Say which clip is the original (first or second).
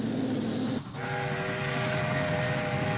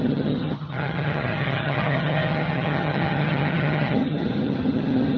first